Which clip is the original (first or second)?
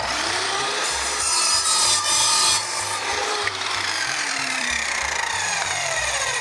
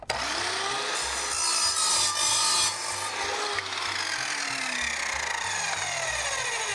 second